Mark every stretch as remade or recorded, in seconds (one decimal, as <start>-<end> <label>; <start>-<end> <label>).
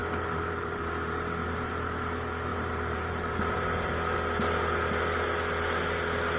0.0-0.8 remade; 0.8-2.5 recorded; 2.5-3.9 remade; 3.9-6.4 recorded